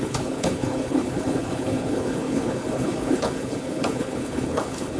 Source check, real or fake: fake